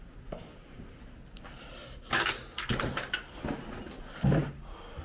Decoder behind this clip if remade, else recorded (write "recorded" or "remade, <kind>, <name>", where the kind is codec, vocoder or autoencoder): recorded